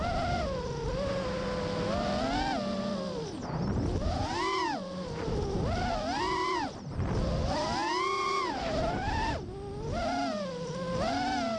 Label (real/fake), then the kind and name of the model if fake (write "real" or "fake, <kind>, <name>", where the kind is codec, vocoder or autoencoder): real